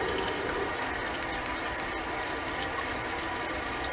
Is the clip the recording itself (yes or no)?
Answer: yes